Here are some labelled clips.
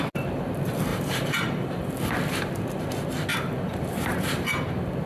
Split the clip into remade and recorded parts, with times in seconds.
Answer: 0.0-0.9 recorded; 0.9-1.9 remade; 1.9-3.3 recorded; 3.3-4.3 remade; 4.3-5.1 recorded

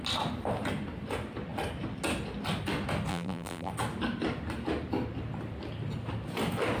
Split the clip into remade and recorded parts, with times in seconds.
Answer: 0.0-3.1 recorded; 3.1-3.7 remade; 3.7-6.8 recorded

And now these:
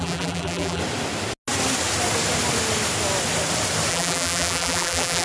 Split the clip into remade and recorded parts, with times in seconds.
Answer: 0.0-0.8 remade; 0.8-3.9 recorded; 3.9-5.2 remade

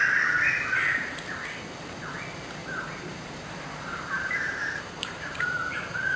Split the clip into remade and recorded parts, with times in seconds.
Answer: 0.0-2.6 recorded; 2.6-5.2 remade; 5.2-6.2 recorded